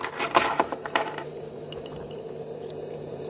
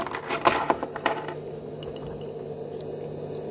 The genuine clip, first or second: second